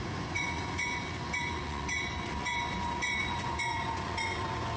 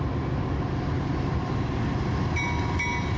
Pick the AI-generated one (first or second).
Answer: first